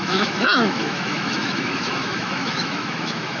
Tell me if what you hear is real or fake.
fake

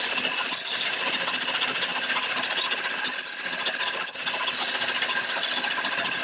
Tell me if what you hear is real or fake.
real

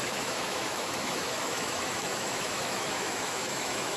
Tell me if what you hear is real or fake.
fake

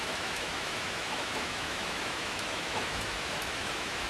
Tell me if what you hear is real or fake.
fake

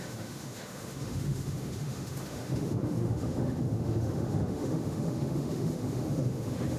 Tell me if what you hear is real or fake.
fake